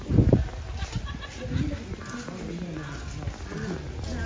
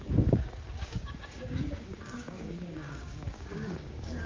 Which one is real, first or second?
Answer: first